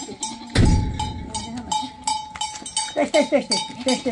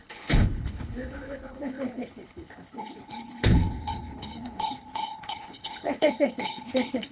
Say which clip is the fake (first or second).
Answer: second